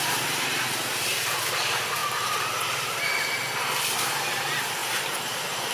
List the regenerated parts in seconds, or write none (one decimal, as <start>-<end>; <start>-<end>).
none